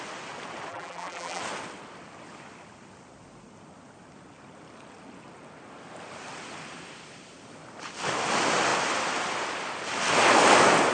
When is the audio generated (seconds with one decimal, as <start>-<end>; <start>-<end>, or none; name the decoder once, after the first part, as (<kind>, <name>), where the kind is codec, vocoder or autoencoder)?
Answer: 0.7-1.4 (vocoder, BigVGAN v2)